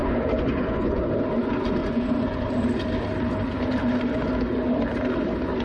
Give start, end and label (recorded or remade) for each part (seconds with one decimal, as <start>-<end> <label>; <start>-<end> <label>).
0.0-1.1 remade; 1.1-1.8 recorded; 1.8-2.4 remade; 2.4-5.6 recorded